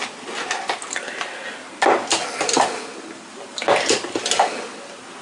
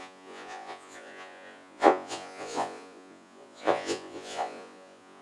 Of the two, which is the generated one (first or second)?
second